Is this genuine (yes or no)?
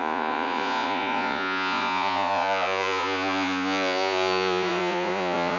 no